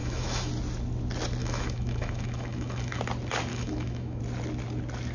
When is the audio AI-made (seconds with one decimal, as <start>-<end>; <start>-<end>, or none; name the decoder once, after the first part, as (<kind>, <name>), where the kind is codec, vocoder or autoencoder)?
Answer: 0.0-0.5 (autoencoder, DAC-VAE); 1.4-3.0; 3.5-4.2